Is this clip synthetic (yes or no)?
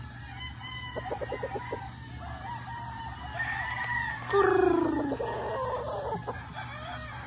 no